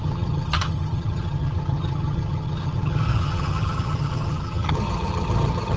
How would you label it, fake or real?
fake